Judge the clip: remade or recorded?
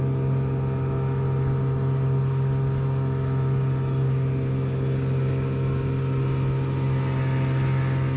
recorded